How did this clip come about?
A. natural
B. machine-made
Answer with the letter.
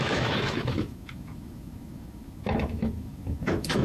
B